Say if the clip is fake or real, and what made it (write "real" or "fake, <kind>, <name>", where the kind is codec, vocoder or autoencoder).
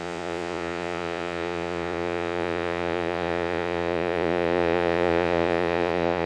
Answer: fake, vocoder, Vocos